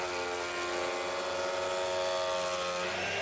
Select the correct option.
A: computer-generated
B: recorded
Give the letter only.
B